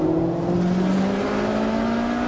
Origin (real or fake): real